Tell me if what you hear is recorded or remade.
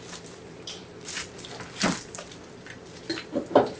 remade